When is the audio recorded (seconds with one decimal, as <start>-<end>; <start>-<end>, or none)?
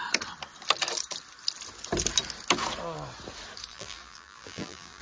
0.0-3.7